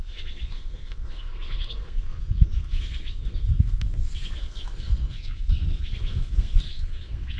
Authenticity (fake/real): fake